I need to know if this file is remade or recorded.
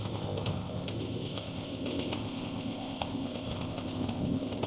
remade